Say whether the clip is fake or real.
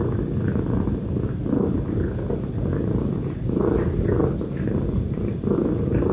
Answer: real